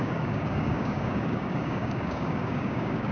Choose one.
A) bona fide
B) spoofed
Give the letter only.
B